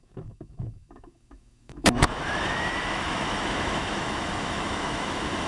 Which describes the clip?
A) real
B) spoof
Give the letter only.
B